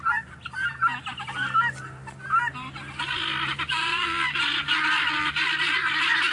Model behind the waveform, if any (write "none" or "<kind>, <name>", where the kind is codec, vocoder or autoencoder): none